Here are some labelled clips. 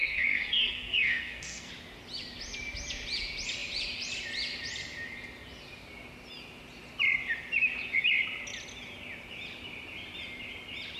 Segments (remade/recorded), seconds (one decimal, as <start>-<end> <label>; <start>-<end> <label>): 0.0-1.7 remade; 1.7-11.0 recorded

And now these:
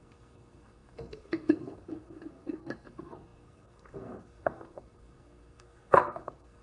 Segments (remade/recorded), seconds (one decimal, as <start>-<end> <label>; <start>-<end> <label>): 0.0-6.6 remade

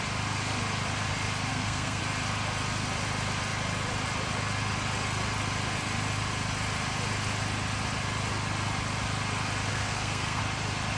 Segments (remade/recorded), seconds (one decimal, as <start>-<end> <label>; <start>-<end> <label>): 0.0-1.5 recorded; 1.5-2.0 remade; 2.0-9.7 recorded; 9.7-10.4 remade; 10.4-11.0 recorded

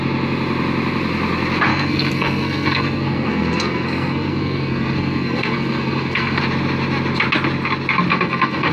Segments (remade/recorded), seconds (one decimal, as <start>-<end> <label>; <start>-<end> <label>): 0.0-1.7 recorded; 1.7-6.4 remade; 6.4-8.1 recorded; 8.1-8.7 remade

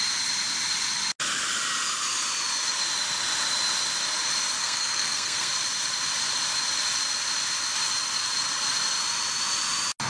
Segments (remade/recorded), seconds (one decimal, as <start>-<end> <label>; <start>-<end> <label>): 0.0-4.6 recorded; 4.6-5.5 remade; 5.5-10.1 recorded

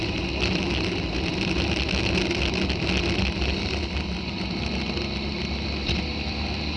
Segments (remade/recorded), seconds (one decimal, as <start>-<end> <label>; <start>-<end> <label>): 0.0-6.8 recorded

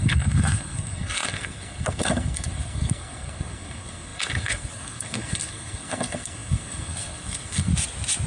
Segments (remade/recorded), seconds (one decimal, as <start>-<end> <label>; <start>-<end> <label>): 0.0-7.7 remade; 7.7-8.3 recorded

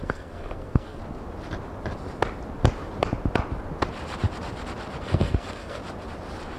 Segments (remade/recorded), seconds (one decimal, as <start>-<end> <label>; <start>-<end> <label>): 0.0-1.0 remade; 1.0-5.0 recorded; 5.0-5.8 remade; 5.8-6.6 recorded